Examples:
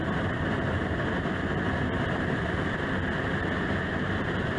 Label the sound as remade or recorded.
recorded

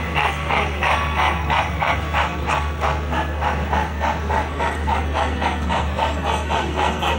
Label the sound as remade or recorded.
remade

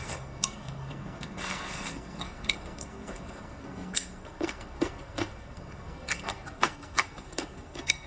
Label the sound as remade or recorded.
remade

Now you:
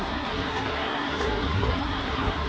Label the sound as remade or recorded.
remade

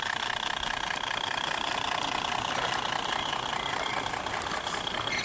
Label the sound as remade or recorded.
recorded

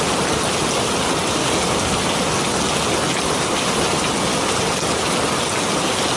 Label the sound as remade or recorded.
recorded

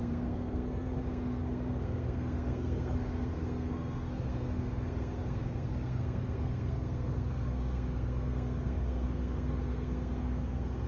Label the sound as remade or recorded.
remade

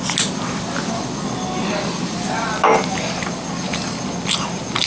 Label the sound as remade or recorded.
recorded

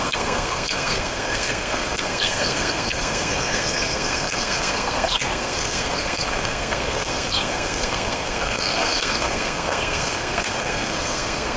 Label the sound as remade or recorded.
remade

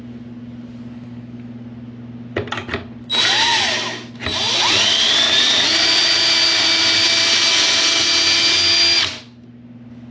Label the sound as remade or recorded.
recorded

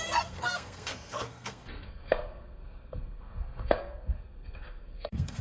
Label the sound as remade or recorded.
remade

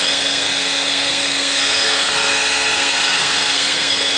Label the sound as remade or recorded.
remade